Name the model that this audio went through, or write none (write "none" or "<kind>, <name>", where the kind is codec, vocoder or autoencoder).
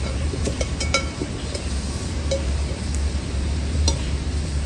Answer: vocoder, BigVGAN v2